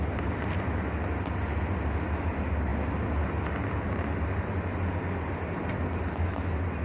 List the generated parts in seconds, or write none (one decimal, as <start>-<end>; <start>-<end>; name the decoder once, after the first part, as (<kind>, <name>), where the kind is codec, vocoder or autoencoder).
none